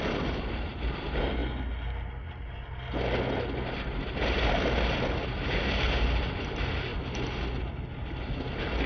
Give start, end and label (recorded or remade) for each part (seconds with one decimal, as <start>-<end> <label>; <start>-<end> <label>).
0.0-8.9 recorded